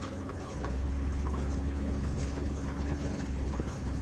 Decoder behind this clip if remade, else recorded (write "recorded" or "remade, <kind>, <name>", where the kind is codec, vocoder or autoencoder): remade, codec, HILCodec